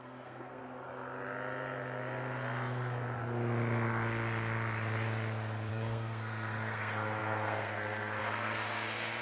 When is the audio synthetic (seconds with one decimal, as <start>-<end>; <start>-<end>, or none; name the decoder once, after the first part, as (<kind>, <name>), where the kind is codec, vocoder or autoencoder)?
0.0-0.6 (codec, SNAC); 5.7-9.2